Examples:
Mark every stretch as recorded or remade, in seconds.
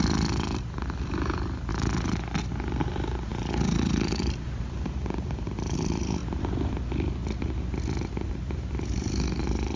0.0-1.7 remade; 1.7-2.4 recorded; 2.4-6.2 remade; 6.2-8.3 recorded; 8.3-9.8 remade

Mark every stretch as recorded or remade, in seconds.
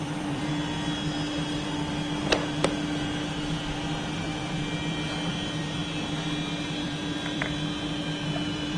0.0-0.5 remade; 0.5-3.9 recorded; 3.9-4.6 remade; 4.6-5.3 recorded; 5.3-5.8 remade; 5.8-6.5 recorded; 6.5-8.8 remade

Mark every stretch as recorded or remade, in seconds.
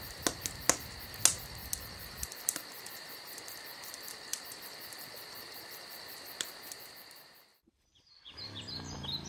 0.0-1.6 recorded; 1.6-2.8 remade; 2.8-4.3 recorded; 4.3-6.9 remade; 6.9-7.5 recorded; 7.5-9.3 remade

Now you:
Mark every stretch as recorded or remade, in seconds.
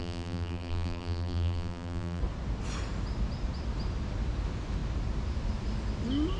0.0-2.2 remade; 2.2-6.4 recorded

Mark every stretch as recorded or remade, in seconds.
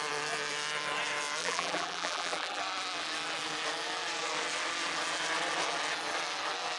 0.0-1.4 recorded; 1.4-2.6 remade; 2.6-6.8 recorded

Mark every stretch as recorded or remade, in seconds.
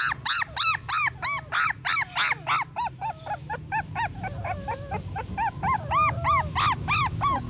0.0-7.5 recorded